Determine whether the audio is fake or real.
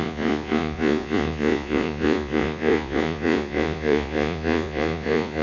fake